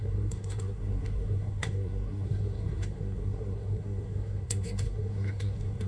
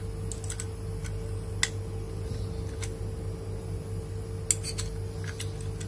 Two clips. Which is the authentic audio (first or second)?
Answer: second